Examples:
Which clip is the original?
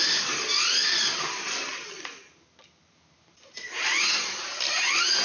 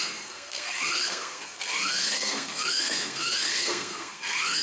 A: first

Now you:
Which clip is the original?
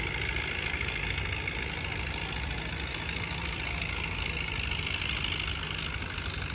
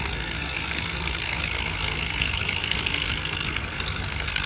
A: first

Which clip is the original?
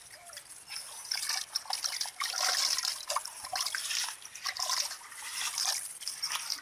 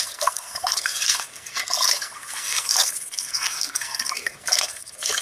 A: first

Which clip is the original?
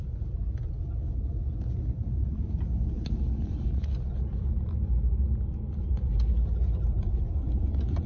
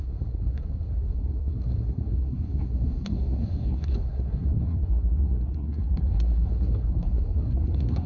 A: first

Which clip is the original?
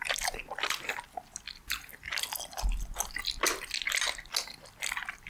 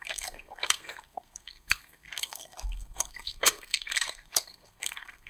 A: first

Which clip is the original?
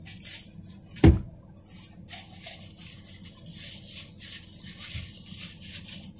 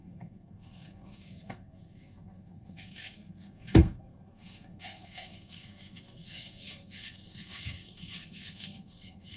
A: first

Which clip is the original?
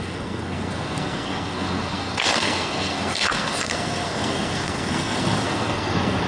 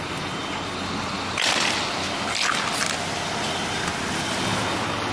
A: second